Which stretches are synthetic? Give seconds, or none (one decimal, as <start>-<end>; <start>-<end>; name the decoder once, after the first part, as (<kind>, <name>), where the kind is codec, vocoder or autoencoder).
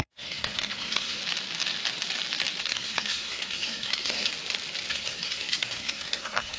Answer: 0.0-1.2 (codec, SNAC); 2.6-4.3; 4.9-6.6